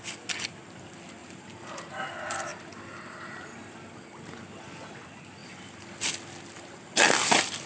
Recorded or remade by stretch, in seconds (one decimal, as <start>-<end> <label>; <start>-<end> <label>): 0.0-1.2 recorded; 1.2-1.9 remade; 1.9-2.5 recorded; 2.5-3.9 remade; 3.9-7.7 recorded